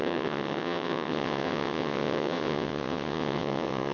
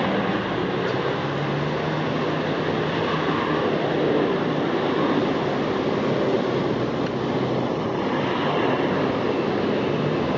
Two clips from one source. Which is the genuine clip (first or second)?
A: second